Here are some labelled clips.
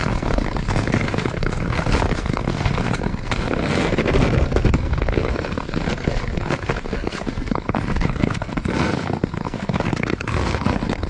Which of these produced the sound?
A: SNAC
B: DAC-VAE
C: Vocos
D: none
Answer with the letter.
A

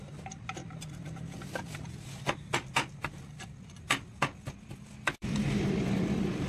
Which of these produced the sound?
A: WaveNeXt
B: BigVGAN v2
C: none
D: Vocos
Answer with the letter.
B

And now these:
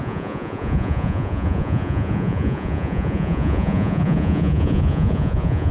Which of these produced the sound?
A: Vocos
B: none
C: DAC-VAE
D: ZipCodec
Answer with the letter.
A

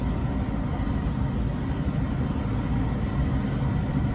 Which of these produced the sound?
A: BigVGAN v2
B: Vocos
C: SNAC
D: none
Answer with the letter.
D